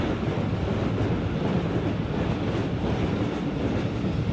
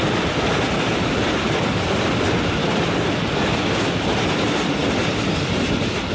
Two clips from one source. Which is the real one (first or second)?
first